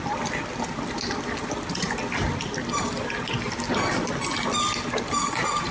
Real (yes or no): yes